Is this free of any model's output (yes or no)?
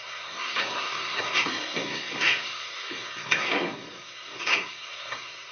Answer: no